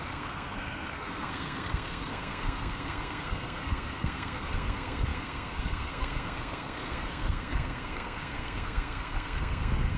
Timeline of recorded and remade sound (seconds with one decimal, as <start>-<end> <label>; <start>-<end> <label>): 0.0-10.0 remade